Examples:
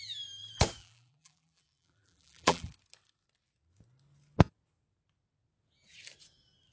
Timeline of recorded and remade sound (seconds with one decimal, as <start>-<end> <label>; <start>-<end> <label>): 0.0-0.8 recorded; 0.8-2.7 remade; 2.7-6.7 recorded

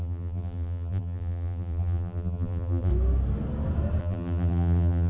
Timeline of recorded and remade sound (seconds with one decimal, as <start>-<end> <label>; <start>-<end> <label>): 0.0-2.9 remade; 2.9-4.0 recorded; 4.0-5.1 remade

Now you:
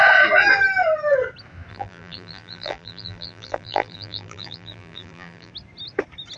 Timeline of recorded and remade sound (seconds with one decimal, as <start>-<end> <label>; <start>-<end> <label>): 0.0-1.7 recorded; 1.7-5.5 remade; 5.5-6.4 recorded

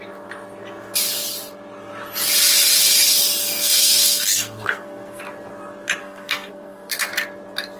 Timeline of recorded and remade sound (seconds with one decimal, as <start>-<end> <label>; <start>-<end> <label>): 0.0-3.4 recorded; 3.4-5.2 remade; 5.2-6.0 recorded; 6.0-7.1 remade; 7.1-7.8 recorded